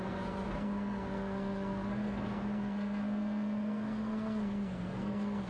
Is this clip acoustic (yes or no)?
no